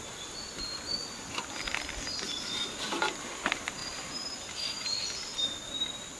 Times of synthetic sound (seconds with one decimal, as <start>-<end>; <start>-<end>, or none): none